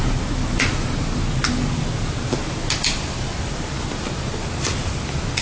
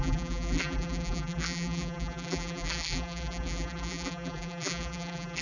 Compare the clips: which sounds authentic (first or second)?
first